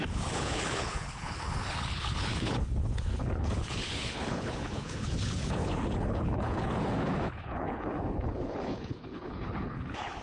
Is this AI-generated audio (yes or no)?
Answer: yes